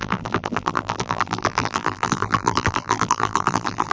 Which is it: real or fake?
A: fake